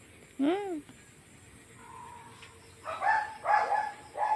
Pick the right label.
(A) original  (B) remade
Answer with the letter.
A